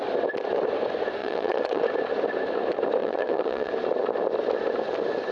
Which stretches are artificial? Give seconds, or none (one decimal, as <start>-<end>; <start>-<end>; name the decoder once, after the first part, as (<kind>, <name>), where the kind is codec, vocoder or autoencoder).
1.2-1.8 (vocoder, Vocos); 3.0-3.7